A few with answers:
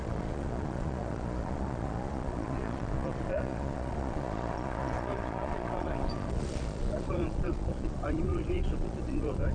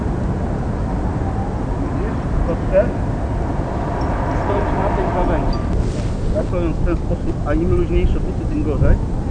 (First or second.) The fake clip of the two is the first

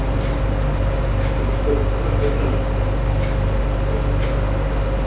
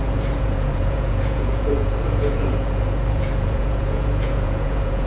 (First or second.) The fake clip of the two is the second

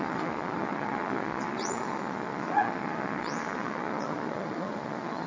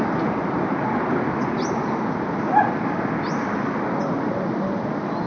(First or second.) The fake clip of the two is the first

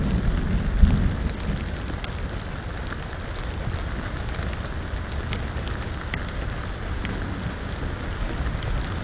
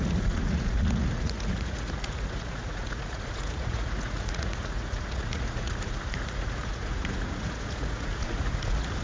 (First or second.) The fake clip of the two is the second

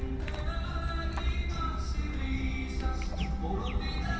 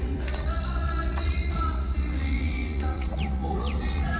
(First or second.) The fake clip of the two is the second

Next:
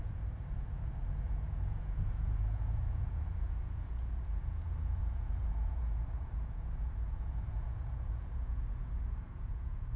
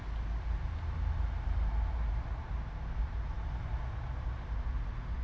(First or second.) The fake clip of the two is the first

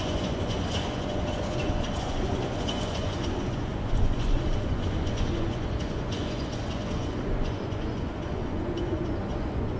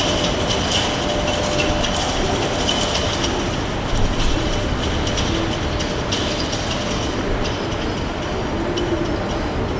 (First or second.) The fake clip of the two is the first